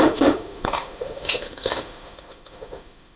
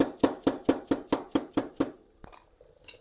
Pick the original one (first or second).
second